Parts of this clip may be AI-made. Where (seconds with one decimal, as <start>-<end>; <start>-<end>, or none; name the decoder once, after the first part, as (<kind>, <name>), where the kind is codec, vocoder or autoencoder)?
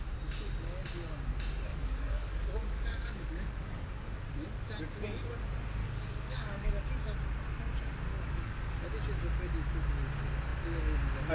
1.7-4.2 (codec, DAC); 5.8-6.7; 8.1-8.8